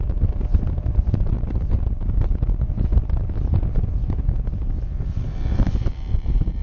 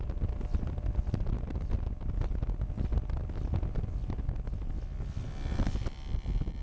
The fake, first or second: first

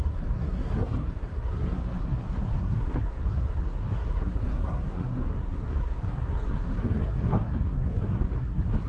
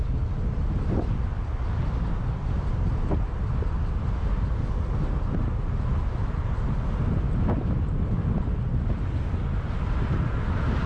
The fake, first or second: first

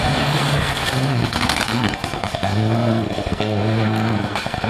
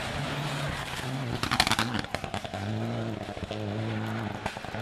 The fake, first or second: first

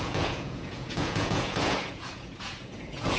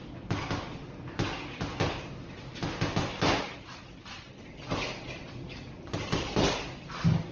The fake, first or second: first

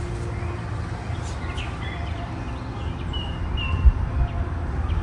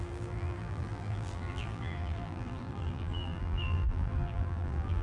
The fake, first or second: second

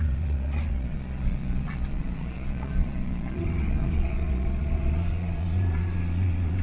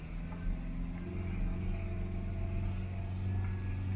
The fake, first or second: first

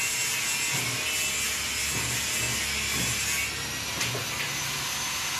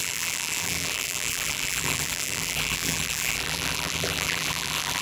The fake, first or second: second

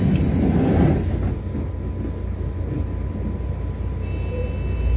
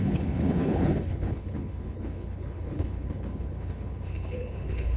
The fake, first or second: second